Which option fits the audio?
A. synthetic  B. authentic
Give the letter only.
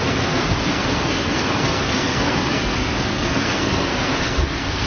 A